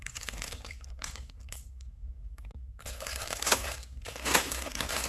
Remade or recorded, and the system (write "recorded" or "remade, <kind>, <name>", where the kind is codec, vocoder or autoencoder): remade, codec, SNAC